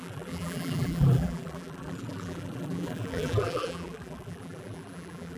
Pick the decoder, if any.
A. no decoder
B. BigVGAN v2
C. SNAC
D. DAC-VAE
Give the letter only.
B